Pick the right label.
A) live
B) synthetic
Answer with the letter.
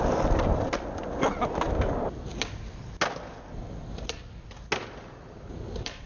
A